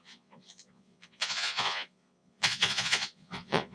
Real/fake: fake